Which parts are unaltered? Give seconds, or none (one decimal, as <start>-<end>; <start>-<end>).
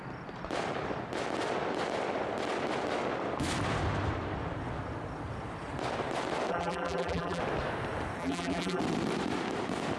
0.0-6.5; 7.4-8.2; 8.8-10.0